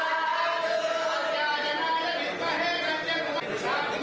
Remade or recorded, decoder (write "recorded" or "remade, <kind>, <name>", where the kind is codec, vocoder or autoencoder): recorded